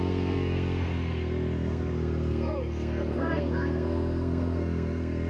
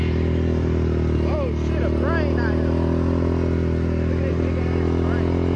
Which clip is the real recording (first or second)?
second